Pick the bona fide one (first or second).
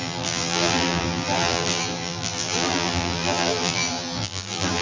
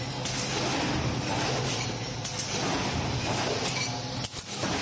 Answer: second